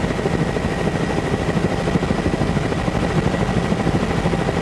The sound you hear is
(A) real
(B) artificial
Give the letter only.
A